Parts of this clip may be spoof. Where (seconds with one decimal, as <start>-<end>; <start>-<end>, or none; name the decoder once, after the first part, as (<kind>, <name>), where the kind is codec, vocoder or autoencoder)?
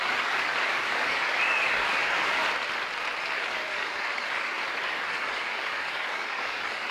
0.0-2.4 (codec, DAC); 3.2-6.9